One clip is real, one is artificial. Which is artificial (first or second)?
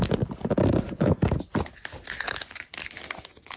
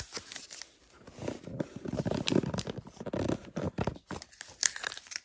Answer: second